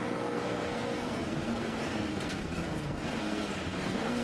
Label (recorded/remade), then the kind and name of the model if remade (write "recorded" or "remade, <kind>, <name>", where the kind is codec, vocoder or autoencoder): remade, codec, SNAC